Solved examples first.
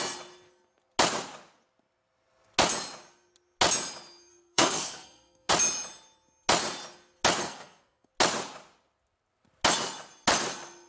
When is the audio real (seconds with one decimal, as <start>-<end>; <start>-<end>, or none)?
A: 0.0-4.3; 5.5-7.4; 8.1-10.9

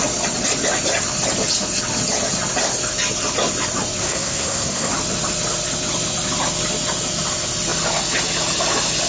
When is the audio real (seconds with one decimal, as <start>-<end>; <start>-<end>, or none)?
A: 0.0-4.0; 4.9-9.1

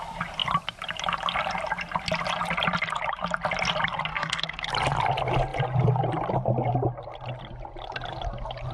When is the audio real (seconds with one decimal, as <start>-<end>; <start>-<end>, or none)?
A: 0.0-4.1; 4.7-8.7

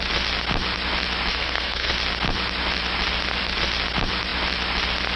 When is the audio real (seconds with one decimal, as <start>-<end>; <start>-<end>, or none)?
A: 0.0-1.3; 1.9-5.2

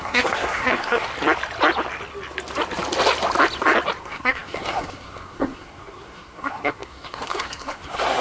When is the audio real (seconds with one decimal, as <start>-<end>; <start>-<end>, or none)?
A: 1.1-4.0

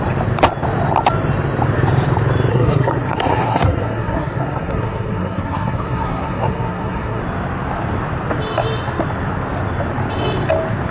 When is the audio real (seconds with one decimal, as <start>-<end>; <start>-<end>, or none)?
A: 0.0-2.5; 7.2-10.9

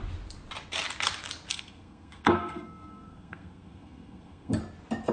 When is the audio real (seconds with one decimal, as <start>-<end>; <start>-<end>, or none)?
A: 0.0-1.5; 4.6-5.1

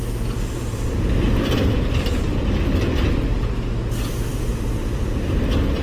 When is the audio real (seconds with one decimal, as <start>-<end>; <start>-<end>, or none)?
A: 0.0-5.8